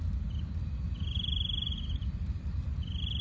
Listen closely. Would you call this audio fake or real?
real